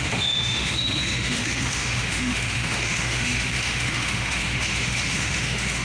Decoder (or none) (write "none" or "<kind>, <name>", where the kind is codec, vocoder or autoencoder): autoencoder, DAC-VAE